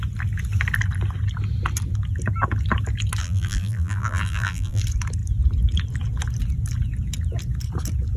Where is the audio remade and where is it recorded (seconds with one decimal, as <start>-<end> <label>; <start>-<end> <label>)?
0.0-3.2 recorded; 3.2-4.8 remade; 4.8-8.2 recorded